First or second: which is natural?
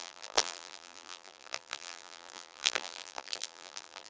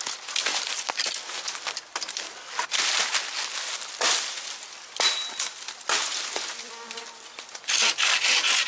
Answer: second